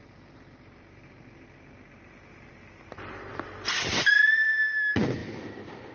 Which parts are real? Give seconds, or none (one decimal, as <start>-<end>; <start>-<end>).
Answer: 0.0-5.2